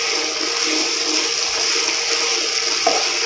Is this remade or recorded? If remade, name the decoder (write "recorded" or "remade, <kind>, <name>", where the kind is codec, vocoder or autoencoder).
recorded